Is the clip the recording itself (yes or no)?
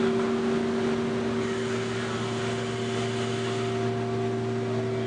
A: yes